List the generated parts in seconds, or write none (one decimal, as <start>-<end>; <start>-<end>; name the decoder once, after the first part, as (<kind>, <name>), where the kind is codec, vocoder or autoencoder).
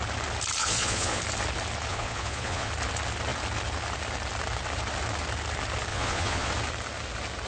0.6-1.2 (vocoder, Vocos); 1.9-2.7; 5.9-6.5